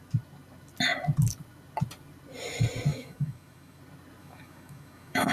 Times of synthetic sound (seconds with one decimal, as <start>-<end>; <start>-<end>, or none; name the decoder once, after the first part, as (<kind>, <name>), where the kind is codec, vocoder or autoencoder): 2.9-3.8 (autoencoder, DAC-VAE); 4.2-5.3